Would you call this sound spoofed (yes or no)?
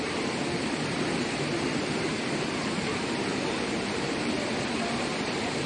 yes